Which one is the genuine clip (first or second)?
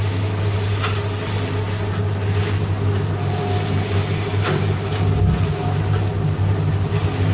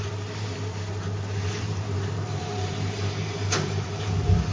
first